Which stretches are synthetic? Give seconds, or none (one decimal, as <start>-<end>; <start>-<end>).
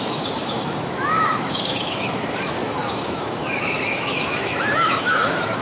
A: 0.0-5.6